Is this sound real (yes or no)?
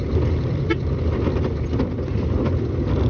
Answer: yes